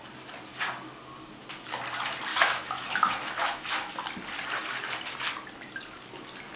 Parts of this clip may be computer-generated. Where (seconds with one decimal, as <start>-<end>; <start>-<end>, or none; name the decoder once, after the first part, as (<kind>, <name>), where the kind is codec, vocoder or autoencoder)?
2.3-3.9 (autoencoder, DAC-VAE)